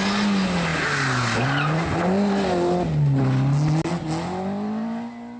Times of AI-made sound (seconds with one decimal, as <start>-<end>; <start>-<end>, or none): none

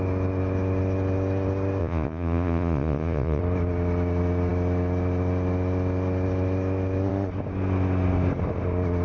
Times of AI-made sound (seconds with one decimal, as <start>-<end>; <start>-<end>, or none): 1.8-3.4

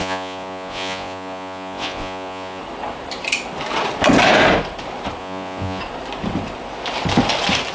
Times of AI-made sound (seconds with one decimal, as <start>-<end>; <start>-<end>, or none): 0.0-2.6; 5.2-5.8

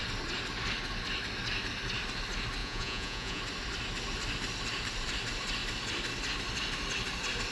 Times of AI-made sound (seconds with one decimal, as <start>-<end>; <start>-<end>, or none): 2.6-3.4